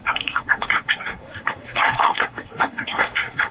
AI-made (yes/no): yes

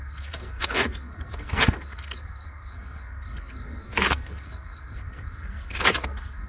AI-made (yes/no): yes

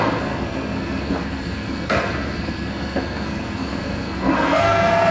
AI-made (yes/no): yes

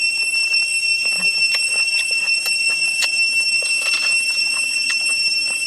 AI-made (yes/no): no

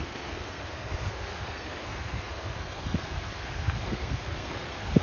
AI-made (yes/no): yes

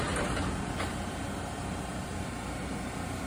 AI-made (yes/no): no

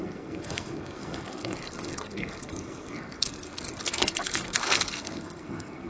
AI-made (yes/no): yes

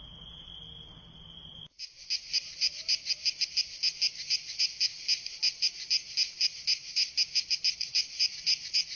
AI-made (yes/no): no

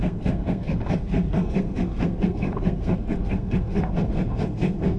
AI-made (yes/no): yes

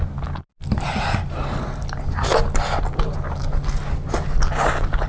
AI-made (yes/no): no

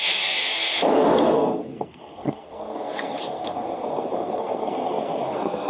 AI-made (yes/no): yes